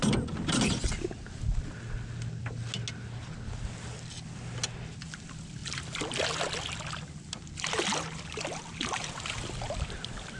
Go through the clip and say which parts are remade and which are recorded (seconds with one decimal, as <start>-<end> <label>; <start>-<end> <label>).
0.0-10.4 recorded